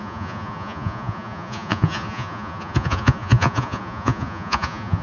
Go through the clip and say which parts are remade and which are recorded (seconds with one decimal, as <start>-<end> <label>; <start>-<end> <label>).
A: 0.0-5.0 remade

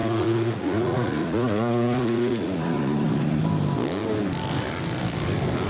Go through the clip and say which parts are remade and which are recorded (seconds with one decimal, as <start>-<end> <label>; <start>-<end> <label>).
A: 0.0-3.4 remade; 3.4-5.7 recorded

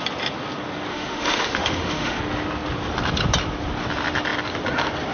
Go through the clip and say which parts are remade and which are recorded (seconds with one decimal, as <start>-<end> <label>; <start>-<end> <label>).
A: 0.0-0.9 recorded; 0.9-2.2 remade; 2.2-5.1 recorded

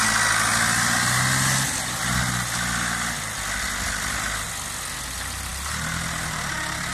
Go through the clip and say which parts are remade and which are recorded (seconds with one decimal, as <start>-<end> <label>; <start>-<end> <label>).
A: 0.0-6.9 recorded

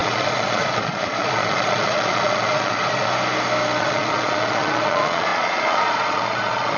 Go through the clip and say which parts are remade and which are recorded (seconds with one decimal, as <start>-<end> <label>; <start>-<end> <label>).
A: 0.0-3.1 remade; 3.1-3.8 recorded; 3.8-6.8 remade

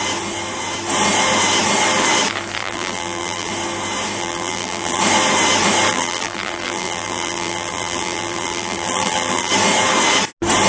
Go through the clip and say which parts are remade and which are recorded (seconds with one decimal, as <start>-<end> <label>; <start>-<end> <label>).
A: 0.0-2.6 recorded; 2.6-3.5 remade; 3.5-4.2 recorded; 4.2-5.0 remade; 5.0-5.9 recorded; 5.9-9.5 remade; 9.5-10.7 recorded

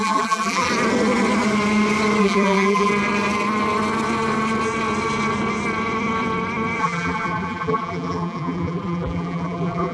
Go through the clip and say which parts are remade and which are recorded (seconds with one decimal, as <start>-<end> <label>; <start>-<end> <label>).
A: 0.0-0.7 remade; 0.7-2.2 recorded; 2.2-2.9 remade; 2.9-6.8 recorded; 6.8-9.9 remade